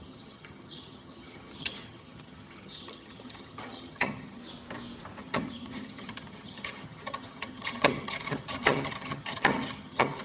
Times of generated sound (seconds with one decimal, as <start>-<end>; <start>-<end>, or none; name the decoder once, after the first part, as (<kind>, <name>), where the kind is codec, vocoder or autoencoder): 0.0-4.4 (vocoder, HiFi-GAN); 5.2-10.2